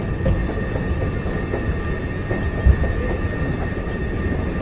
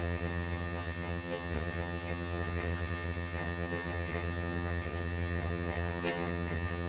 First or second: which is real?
first